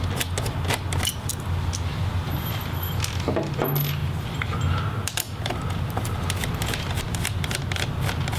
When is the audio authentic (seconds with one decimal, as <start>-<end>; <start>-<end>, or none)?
0.0-8.4